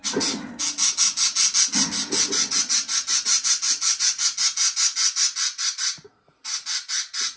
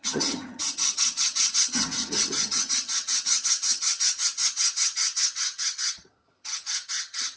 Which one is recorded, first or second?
first